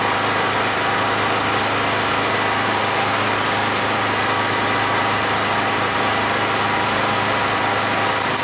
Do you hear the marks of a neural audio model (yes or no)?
no